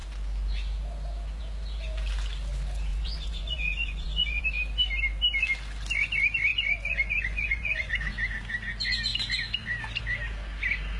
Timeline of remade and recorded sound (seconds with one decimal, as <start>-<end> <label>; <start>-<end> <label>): 0.0-2.9 recorded; 2.9-4.4 remade; 4.4-6.5 recorded; 6.5-7.9 remade; 7.9-11.0 recorded